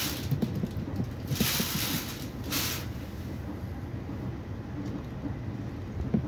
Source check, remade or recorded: recorded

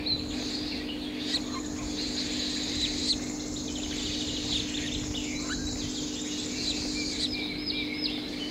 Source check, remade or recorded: recorded